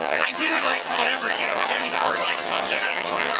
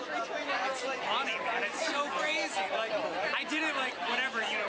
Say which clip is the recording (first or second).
second